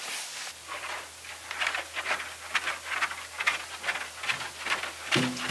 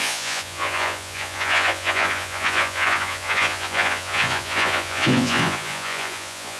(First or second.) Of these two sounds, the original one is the first